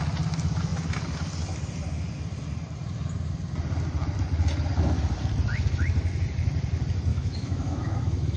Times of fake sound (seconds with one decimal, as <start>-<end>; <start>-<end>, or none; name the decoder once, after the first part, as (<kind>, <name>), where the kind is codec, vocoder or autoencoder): 7.1-8.4 (autoencoder, DAC-VAE)